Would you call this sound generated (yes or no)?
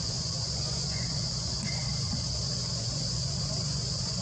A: yes